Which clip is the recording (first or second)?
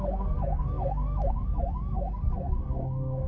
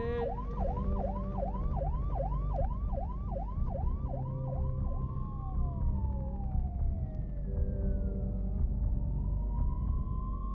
second